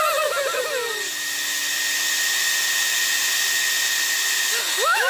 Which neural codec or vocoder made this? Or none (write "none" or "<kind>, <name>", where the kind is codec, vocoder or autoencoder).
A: none